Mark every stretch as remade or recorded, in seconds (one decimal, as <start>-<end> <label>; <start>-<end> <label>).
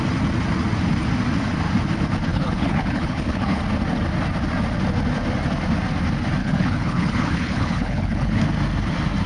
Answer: 0.0-2.3 recorded; 2.3-3.6 remade; 3.6-6.4 recorded; 6.4-8.4 remade; 8.4-9.3 recorded